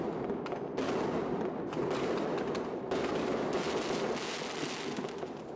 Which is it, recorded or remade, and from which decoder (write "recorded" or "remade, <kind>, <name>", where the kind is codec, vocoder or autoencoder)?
recorded